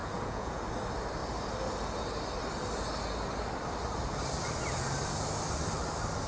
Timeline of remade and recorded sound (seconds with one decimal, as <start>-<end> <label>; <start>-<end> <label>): 0.0-0.6 remade; 0.6-6.3 recorded